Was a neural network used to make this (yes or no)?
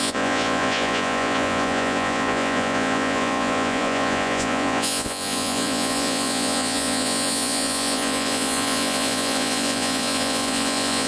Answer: yes